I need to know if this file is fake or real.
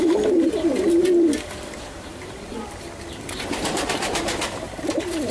fake